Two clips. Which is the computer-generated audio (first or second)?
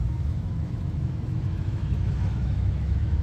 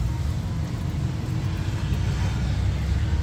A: first